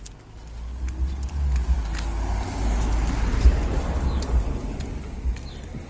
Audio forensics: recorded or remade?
recorded